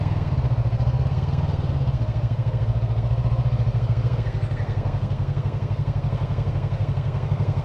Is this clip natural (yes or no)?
no